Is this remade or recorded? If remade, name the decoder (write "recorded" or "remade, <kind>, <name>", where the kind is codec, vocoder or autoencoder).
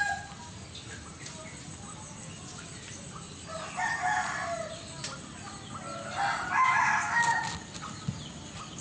recorded